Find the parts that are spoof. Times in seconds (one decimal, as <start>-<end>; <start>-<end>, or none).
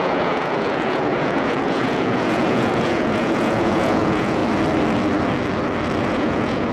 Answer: 0.0-4.4; 6.0-6.7